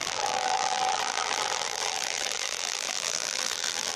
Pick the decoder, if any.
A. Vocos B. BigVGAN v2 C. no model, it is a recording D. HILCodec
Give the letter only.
B